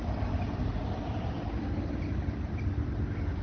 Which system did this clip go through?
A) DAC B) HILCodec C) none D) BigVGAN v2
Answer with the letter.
C